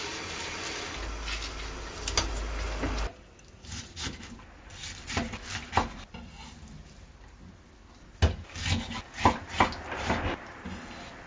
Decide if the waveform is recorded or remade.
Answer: recorded